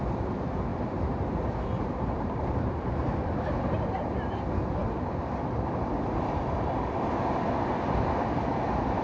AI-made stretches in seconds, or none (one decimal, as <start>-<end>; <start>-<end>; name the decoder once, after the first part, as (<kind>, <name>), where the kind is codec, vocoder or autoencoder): 0.7-2.9 (vocoder, BigVGAN v2)